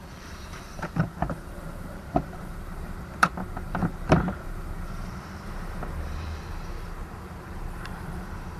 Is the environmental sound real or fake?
fake